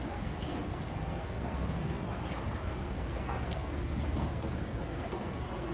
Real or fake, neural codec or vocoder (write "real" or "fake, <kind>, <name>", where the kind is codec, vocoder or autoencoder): fake, codec, SNAC